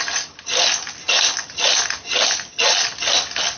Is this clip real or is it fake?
real